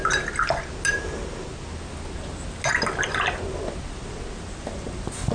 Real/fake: real